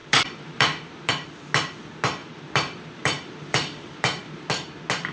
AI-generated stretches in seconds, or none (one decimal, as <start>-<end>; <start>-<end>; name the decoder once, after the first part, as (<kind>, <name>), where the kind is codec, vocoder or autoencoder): 0.0-1.1 (vocoder, BigVGAN v2); 2.2-4.5